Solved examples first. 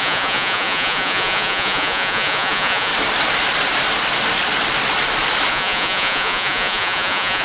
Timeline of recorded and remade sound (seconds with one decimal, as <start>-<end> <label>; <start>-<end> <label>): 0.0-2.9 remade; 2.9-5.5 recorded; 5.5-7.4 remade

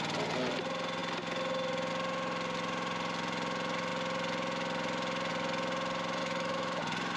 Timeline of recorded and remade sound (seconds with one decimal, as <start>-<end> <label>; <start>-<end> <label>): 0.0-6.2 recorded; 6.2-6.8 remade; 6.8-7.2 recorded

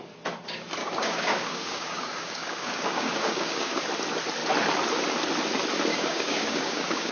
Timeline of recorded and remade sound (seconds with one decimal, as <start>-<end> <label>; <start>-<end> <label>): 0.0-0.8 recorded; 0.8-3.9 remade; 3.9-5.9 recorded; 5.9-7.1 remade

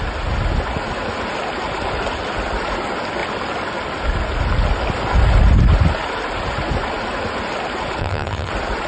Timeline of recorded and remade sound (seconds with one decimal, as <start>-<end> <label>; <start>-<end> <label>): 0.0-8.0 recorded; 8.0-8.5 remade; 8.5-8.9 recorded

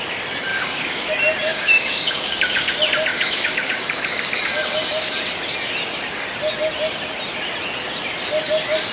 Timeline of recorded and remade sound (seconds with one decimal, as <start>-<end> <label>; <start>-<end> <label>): 0.0-0.5 recorded; 0.5-1.1 remade; 1.1-1.5 recorded; 1.5-2.7 remade; 2.7-3.1 recorded; 3.1-4.4 remade; 4.4-8.9 recorded

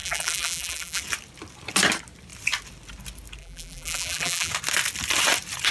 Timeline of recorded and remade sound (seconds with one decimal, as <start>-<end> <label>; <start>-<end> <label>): 0.0-1.0 remade; 1.0-3.4 recorded; 3.4-4.5 remade; 4.5-5.7 recorded